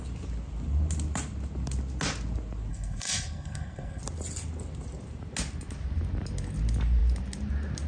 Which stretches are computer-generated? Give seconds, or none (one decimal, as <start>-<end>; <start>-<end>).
2.7-4.0